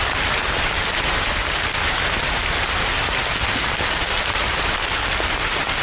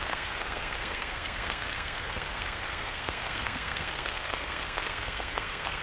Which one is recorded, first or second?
first